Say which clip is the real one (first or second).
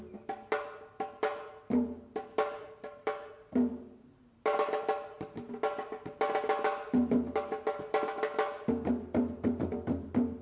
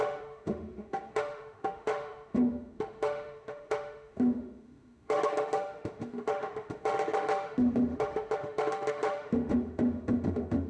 first